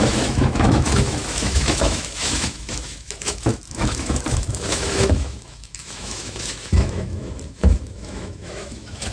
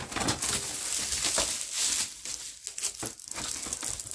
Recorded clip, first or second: second